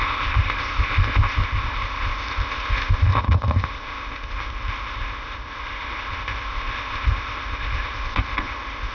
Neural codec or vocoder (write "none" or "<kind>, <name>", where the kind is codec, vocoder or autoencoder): codec, ZipCodec